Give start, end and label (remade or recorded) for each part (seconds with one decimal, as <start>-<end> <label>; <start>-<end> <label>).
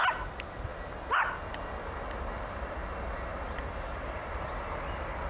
0.0-5.3 recorded